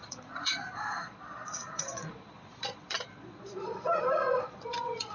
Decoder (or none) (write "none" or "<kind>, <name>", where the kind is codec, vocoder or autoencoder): vocoder, Vocos